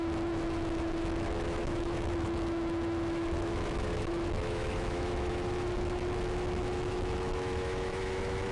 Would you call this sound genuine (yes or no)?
no